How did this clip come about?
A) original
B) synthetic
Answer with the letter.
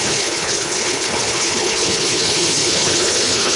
B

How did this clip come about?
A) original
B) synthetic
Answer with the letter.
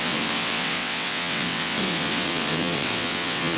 B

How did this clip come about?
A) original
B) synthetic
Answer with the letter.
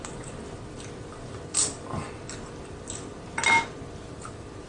A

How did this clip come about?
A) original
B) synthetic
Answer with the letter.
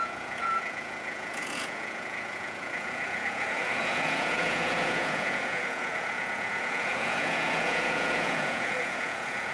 B